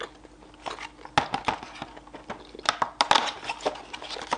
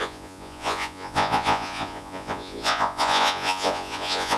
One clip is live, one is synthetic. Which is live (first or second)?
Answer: first